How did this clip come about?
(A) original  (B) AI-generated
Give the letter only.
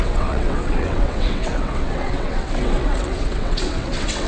B